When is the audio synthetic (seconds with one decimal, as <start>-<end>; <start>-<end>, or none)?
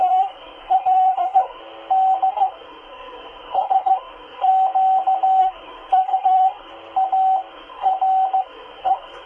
0.0-1.6; 2.3-4.5; 5.4-6.7; 7.5-7.9; 8.4-9.3